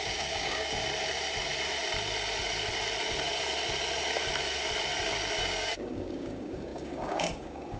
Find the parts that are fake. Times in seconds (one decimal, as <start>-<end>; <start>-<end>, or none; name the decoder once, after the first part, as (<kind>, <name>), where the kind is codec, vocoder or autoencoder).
0.0-0.8 (codec, DAC); 5.4-7.8